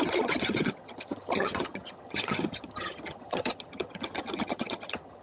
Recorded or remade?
remade